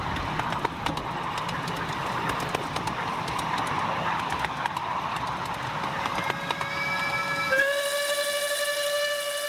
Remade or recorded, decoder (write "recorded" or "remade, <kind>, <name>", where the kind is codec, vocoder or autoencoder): recorded